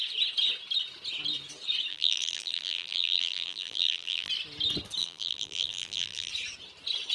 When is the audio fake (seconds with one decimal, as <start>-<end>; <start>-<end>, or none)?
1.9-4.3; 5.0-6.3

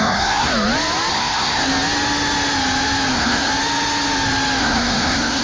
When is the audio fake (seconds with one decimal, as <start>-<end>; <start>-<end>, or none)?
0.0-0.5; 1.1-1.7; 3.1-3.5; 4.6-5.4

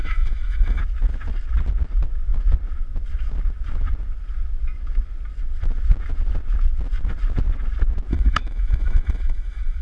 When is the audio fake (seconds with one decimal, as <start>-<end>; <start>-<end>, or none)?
0.0-0.8; 8.1-9.8